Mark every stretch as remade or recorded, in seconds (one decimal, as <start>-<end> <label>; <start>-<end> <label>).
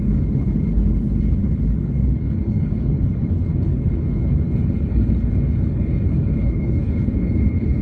0.0-7.8 remade